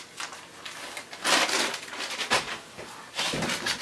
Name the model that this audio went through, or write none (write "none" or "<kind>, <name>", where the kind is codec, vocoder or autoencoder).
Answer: none